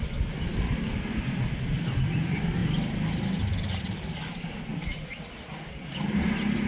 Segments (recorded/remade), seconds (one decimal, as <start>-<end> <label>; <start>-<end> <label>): 0.0-6.7 recorded